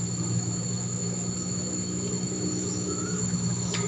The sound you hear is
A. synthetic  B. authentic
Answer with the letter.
A